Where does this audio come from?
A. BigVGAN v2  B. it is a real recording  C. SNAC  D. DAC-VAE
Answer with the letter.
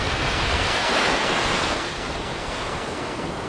C